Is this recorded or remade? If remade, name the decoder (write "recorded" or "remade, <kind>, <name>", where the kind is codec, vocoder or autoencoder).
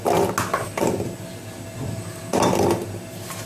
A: recorded